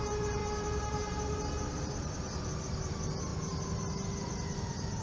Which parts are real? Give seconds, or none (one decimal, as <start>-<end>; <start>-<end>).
0.4-2.6; 3.3-4.2